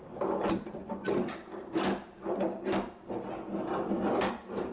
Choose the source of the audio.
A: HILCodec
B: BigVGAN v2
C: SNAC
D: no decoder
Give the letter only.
D